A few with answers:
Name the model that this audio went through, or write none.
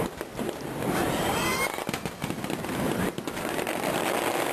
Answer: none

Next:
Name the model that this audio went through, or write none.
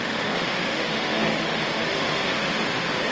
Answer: autoencoder, DAC-VAE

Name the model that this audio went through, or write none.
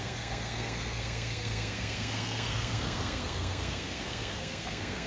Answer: codec, SNAC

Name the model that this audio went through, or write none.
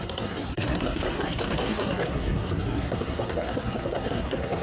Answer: codec, SNAC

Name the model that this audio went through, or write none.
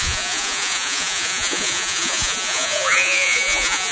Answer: vocoder, Vocos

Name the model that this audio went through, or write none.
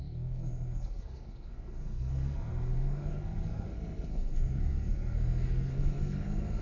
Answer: codec, SNAC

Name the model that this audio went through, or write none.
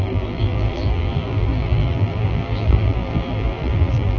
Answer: vocoder, BigVGAN v2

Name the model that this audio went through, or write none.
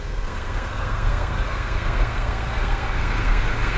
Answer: codec, SNAC